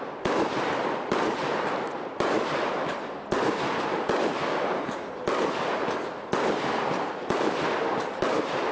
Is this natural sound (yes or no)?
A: yes